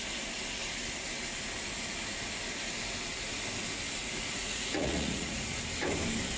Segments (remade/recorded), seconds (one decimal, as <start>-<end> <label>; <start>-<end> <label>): 0.0-4.0 recorded; 4.0-5.6 remade; 5.6-6.4 recorded